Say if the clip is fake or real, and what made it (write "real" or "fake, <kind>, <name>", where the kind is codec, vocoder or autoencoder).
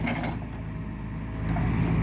real